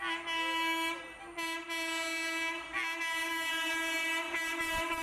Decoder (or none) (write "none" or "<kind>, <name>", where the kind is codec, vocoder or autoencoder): none